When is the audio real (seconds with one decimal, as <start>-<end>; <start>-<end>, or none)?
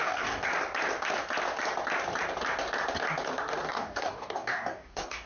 0.5-3.7